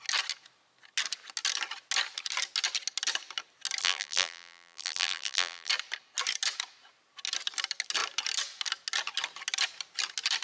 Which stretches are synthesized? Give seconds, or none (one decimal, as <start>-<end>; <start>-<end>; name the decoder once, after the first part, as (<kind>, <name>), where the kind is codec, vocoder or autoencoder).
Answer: 3.8-5.7 (vocoder, BigVGAN v2)